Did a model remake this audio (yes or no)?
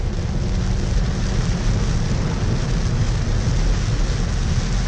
no